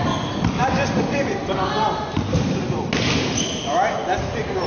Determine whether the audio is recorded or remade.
recorded